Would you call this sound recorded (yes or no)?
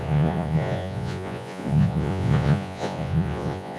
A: no